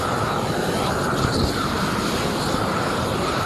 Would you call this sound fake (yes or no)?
no